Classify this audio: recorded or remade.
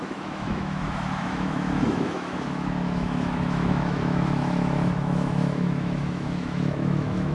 remade